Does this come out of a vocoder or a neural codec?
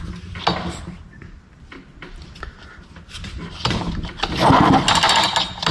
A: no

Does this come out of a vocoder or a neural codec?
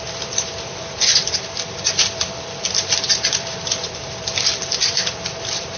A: yes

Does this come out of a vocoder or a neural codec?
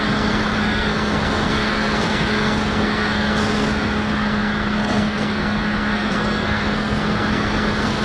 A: yes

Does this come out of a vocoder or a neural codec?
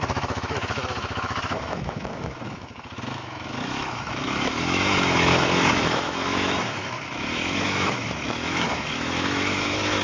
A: yes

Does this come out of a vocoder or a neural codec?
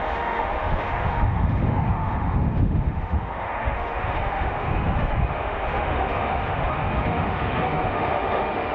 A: yes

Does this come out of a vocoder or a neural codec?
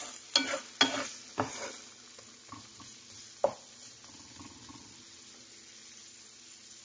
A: no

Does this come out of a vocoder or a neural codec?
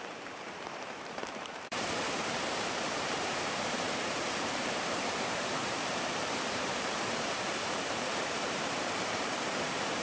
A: yes